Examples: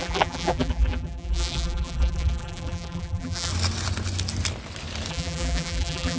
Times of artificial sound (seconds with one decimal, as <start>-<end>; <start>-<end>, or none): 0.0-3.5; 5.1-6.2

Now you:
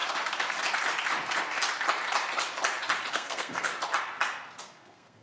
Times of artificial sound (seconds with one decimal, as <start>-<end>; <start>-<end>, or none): 3.1-3.7; 4.6-5.2

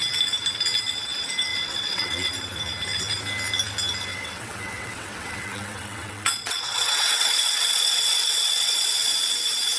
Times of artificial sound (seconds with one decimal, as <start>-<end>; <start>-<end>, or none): 1.5-2.3; 4.1-8.9

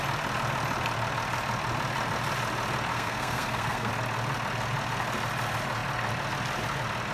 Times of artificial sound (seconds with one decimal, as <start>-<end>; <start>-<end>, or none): 2.9-3.9